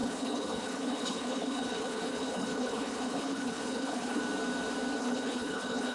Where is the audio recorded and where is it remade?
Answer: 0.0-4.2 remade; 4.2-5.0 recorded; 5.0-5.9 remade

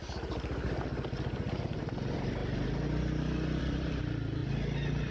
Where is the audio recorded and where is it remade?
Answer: 0.0-5.1 recorded